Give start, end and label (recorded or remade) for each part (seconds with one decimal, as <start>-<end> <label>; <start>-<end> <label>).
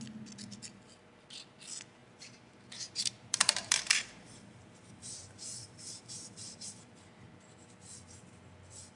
0.0-2.0 recorded; 2.0-6.9 remade; 6.9-9.0 recorded